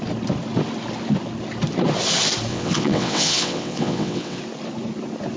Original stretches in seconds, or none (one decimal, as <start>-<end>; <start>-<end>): 0.0-2.5; 4.4-5.4